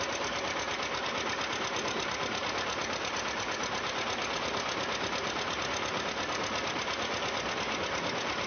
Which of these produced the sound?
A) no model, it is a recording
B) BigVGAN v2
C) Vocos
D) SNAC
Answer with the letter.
B